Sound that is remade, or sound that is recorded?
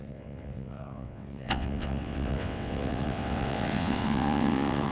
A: remade